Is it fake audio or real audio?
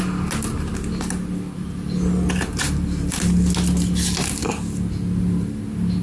real